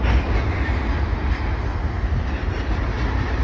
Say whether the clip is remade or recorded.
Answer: recorded